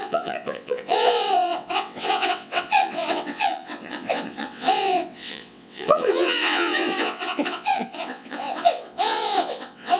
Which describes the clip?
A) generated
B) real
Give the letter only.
A